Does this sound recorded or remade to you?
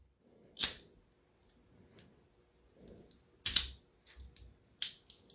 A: recorded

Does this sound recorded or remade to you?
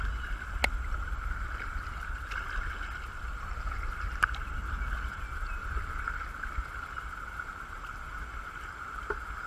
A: recorded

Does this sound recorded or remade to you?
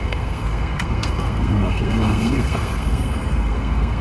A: remade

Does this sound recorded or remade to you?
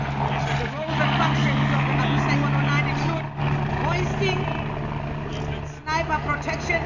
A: recorded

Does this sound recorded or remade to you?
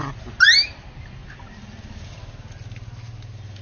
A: recorded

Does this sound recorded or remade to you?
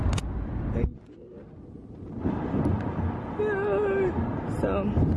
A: recorded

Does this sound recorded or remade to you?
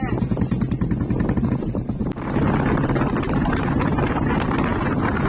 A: recorded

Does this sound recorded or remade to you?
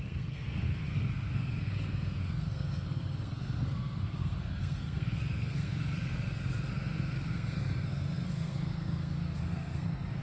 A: remade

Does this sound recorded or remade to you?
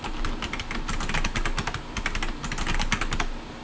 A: recorded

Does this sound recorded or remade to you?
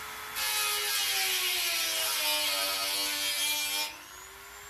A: recorded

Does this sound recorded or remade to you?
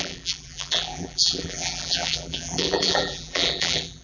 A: remade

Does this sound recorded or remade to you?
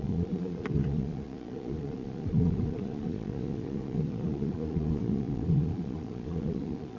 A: remade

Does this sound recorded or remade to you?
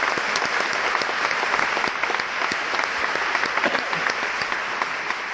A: recorded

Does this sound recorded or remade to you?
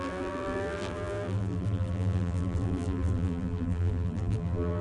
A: remade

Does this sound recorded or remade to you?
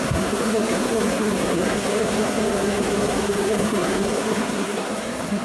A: remade